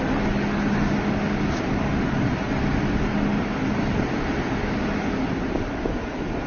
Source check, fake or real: real